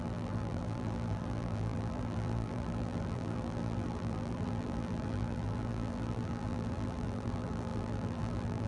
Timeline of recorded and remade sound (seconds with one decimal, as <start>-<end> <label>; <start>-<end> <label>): 0.0-8.7 remade